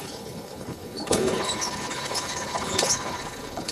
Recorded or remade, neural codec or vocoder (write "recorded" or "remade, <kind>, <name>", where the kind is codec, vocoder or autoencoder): remade, codec, HILCodec